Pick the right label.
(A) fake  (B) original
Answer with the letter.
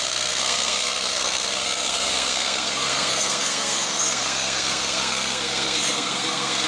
A